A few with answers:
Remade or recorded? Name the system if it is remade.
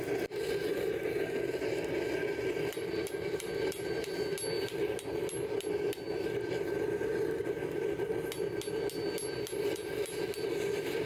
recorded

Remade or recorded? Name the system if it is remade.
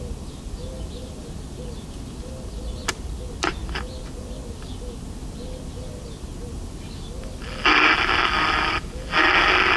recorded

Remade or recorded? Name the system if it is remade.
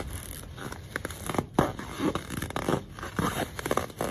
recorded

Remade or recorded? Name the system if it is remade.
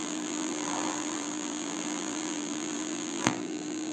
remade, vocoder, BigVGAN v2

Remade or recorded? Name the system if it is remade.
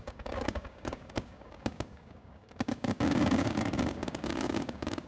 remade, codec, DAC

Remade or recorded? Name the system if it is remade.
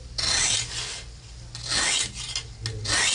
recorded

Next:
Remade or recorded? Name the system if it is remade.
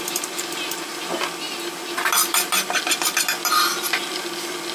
recorded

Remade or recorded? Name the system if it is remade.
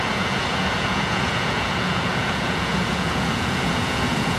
remade, vocoder, Vocos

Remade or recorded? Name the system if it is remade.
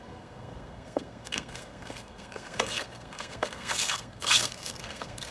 remade, codec, SNAC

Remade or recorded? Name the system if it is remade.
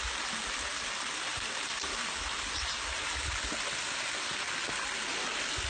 recorded